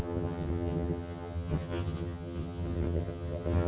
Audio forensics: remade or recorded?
remade